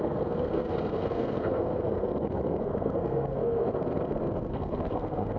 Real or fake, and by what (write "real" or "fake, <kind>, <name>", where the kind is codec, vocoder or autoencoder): fake, codec, SNAC